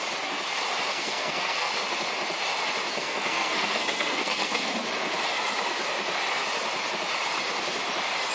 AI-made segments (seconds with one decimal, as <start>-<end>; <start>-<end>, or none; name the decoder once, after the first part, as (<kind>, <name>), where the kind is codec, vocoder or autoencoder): 0.9-1.7 (codec, SNAC); 2.9-4.7

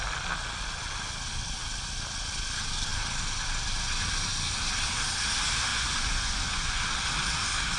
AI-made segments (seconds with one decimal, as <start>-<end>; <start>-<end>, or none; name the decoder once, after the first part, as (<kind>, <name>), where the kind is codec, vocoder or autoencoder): 5.7-6.8 (vocoder, Vocos)

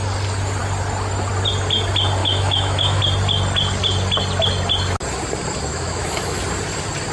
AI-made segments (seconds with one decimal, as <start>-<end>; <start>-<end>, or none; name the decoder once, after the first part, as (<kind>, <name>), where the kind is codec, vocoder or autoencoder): 2.2-3.0 (autoencoder, DAC-VAE); 5.7-6.4

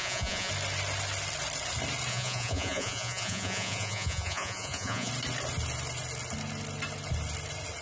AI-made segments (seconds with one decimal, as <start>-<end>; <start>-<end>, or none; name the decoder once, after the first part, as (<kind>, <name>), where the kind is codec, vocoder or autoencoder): 0.0-0.5 (vocoder, Vocos); 2.1-5.1

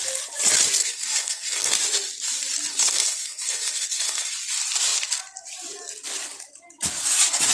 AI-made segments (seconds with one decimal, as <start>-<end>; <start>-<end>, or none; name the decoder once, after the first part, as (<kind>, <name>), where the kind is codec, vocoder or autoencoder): 0.8-1.7 (codec, SNAC); 2.7-4.3

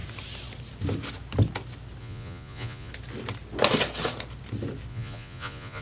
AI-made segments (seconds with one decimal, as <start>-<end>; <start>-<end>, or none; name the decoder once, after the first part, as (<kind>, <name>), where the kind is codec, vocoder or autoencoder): 2.0-2.9 (vocoder, Vocos); 4.9-5.8

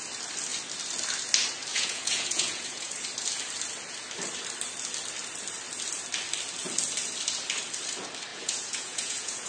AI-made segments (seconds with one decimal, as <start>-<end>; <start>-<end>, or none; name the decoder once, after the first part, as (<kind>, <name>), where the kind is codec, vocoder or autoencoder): 1.7-2.9 (vocoder, Vocos); 8.3-9.5

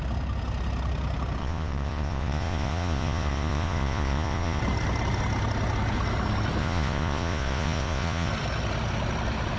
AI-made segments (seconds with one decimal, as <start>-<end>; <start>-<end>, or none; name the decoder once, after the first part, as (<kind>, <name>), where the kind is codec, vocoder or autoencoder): 1.4-4.6 (vocoder, Vocos); 6.6-8.3